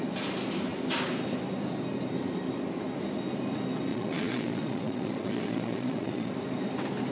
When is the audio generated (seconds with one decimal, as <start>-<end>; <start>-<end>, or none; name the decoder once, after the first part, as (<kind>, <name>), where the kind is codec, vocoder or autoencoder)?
3.9-6.3 (vocoder, Vocos)